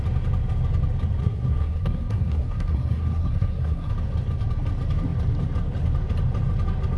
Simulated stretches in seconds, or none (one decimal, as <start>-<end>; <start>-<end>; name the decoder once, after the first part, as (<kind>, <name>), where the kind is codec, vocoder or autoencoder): 1.2-3.9 (codec, SNAC)